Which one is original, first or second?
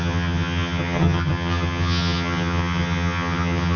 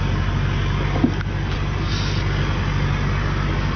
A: second